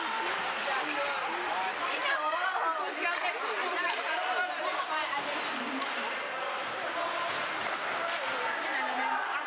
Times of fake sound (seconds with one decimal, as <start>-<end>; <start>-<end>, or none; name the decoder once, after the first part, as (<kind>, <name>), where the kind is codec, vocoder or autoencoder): none